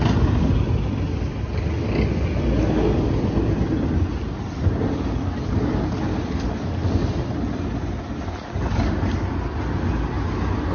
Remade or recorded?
recorded